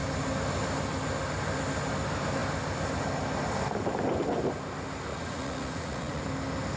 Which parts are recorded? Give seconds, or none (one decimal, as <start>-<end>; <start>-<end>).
0.0-5.1; 6.2-6.8